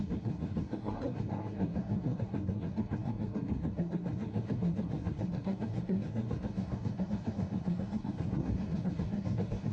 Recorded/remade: remade